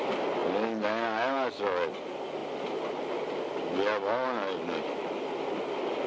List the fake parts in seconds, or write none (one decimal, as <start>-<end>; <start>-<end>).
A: none